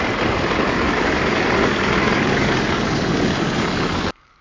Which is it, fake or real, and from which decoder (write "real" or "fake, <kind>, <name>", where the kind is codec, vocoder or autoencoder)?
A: fake, codec, DAC